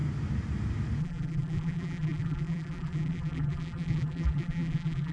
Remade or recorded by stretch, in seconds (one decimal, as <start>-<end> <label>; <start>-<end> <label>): 0.0-1.0 recorded; 1.0-5.1 remade